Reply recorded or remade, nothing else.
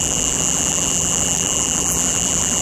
remade